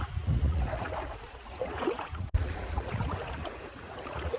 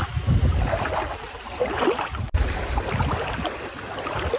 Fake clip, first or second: first